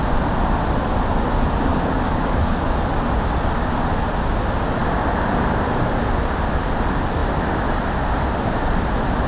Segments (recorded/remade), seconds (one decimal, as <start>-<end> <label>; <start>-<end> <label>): 0.0-1.7 recorded; 1.7-2.9 remade; 2.9-9.3 recorded